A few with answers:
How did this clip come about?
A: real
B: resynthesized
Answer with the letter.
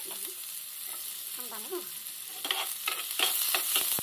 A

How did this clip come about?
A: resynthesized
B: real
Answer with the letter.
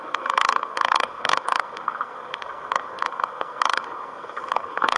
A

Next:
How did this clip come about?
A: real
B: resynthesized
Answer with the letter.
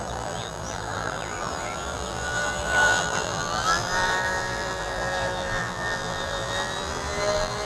B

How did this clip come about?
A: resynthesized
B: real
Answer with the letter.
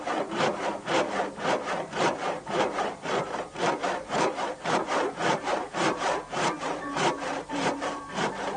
A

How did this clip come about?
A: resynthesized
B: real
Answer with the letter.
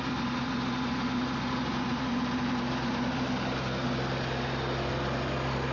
B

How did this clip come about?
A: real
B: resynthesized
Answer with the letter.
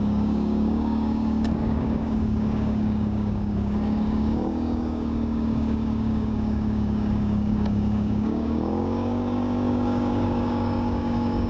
B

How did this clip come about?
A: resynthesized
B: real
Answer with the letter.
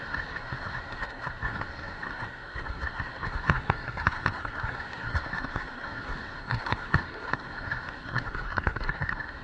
A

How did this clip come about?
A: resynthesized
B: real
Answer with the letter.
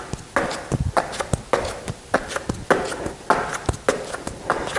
B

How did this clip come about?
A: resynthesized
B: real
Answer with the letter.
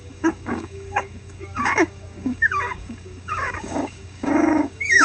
A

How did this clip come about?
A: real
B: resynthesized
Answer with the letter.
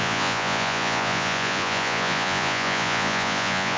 B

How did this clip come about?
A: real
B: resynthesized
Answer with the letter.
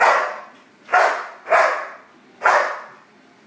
A